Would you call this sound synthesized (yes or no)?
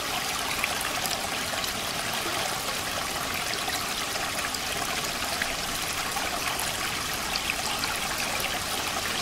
no